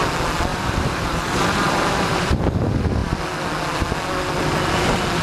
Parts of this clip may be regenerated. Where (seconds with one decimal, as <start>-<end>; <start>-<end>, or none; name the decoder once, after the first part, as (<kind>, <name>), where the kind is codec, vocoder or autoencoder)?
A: 0.5-2.4 (vocoder, BigVGAN v2)